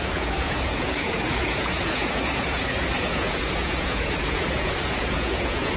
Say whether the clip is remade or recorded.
remade